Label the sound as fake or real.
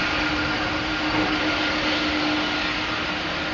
real